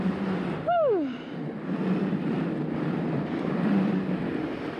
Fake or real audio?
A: fake